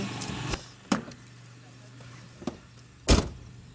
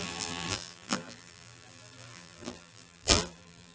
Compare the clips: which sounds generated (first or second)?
second